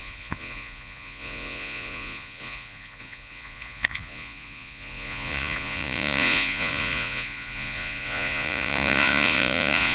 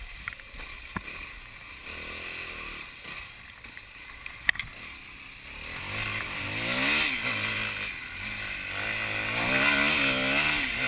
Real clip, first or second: second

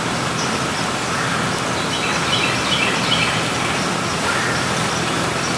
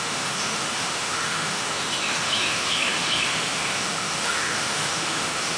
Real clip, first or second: first